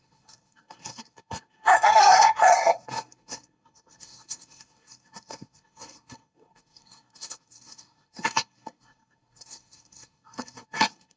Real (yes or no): no